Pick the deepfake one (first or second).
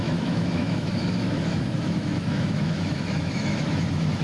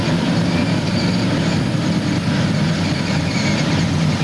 first